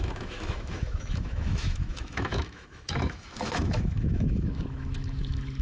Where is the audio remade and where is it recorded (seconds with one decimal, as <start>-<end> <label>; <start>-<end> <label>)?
0.0-5.6 remade